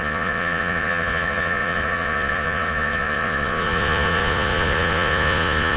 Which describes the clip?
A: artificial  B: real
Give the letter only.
A